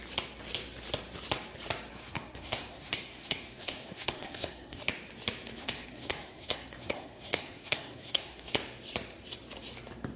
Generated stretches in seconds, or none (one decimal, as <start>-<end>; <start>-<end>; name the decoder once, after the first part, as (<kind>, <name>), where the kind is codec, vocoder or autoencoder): 1.9-4.8 (codec, SNAC); 5.6-8.5

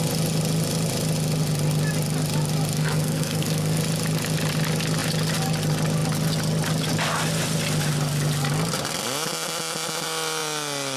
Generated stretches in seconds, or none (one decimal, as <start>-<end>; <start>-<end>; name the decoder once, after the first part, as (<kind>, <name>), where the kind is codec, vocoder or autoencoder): 2.7-3.8 (codec, SNAC)

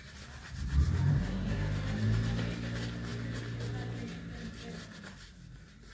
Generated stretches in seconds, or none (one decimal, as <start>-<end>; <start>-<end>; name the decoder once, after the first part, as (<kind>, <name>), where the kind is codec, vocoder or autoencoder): 1.1-1.6 (codec, SNAC)

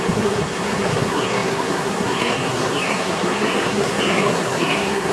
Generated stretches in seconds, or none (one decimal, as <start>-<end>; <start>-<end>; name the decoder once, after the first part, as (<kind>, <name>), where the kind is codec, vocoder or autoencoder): 0.0-5.1 (codec, SNAC)

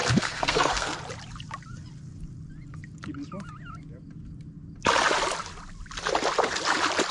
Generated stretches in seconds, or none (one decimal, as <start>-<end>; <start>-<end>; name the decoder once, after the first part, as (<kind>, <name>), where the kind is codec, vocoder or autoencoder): 0.0-1.0 (codec, SNAC)

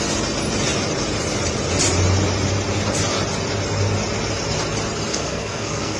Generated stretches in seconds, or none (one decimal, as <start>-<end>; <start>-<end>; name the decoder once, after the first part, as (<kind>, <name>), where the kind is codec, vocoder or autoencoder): 5.1-6.0 (codec, SNAC)